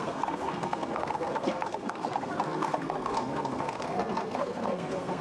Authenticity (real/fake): fake